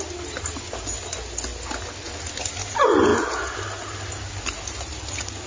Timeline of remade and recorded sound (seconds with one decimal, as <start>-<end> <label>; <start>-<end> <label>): 0.0-5.5 recorded